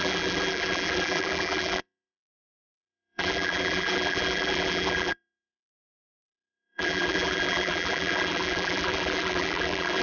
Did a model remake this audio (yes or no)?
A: yes